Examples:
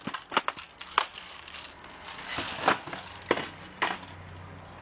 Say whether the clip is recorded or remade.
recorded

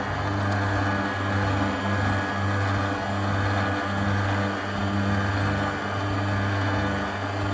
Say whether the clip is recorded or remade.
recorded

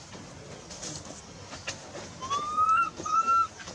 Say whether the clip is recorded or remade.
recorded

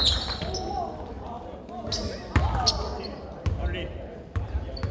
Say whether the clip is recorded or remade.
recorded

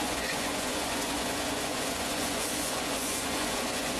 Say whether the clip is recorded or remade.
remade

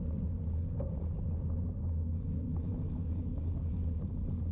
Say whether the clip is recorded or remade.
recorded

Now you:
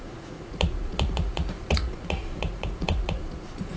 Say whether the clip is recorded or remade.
remade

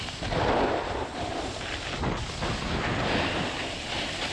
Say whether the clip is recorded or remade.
recorded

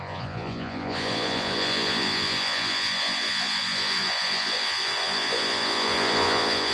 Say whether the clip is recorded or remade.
remade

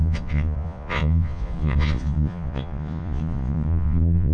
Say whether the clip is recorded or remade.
remade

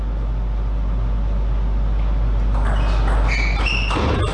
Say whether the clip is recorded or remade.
recorded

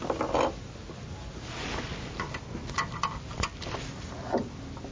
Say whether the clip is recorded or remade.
recorded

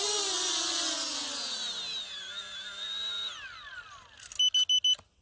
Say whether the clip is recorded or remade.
recorded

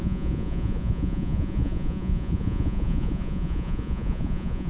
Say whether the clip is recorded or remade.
remade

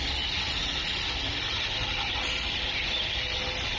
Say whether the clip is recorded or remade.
recorded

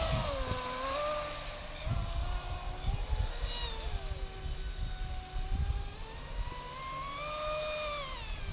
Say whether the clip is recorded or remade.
recorded